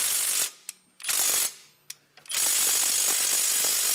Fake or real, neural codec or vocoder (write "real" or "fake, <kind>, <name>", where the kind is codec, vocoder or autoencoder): real